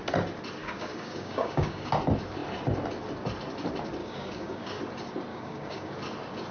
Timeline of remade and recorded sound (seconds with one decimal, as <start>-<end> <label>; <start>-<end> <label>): 0.0-0.6 recorded; 0.6-1.9 remade; 1.9-4.0 recorded; 4.0-4.8 remade; 4.8-5.3 recorded; 5.3-5.9 remade; 5.9-6.5 recorded